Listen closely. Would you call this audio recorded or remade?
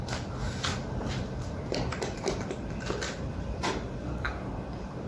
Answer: remade